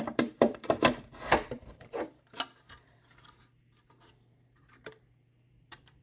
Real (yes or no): no